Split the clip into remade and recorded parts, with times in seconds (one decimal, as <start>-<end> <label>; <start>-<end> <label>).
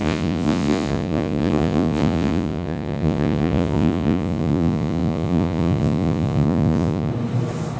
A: 0.0-7.1 remade; 7.1-7.8 recorded